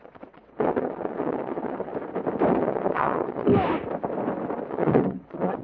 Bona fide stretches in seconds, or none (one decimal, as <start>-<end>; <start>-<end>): 1.9-2.5; 3.5-4.7

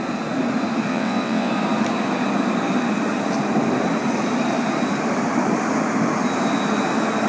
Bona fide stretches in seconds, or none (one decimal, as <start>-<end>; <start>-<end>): 0.0-0.9; 1.5-7.3

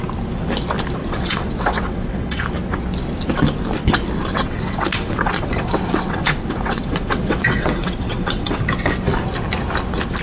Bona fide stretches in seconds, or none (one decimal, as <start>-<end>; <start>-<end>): 0.0-1.0; 2.4-4.3; 8.6-10.2

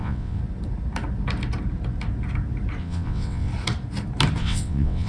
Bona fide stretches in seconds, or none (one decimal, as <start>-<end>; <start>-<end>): 0.4-2.8; 3.5-4.4

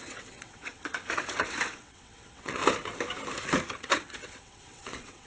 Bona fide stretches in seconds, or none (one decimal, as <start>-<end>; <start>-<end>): 2.6-3.8